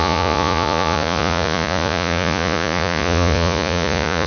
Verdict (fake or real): fake